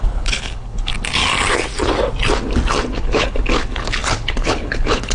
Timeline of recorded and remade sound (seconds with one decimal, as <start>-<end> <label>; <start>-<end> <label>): 0.0-0.9 remade; 0.9-2.9 recorded; 2.9-5.1 remade